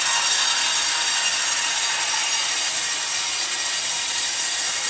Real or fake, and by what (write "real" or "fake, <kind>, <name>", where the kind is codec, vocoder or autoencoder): real